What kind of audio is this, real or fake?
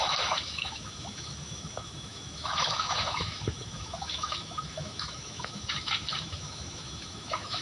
fake